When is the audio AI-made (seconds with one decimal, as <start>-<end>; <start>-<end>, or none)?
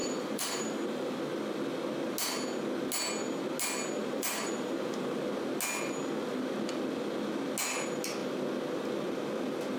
0.0-1.2; 4.0-5.2